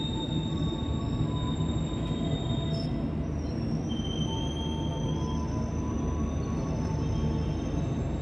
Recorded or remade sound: recorded